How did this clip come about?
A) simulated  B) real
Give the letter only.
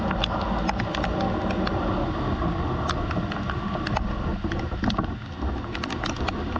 B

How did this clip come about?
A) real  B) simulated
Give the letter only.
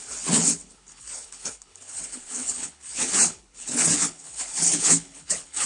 B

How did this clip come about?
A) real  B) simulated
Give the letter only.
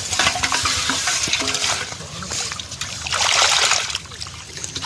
A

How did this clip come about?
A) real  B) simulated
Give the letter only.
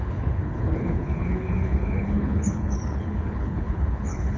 B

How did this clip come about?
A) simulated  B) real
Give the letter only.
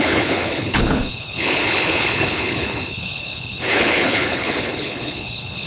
A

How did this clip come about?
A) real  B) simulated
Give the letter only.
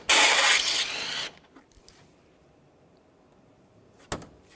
A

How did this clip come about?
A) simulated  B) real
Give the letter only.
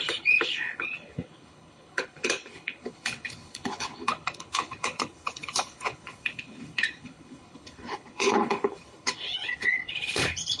A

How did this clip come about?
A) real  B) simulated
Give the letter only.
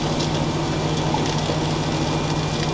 A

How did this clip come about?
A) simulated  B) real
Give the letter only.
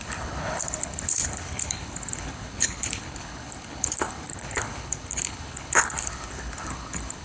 A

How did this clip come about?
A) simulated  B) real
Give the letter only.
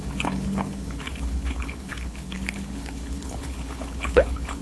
A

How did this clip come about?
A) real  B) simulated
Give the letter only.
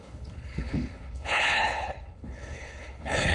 B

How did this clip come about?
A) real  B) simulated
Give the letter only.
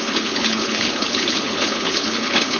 B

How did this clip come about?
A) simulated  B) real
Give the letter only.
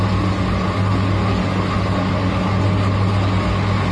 B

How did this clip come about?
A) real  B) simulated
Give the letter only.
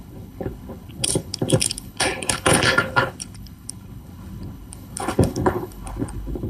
B